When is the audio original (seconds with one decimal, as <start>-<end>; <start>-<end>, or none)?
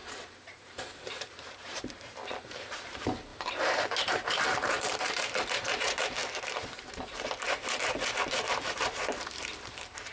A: 6.2-6.9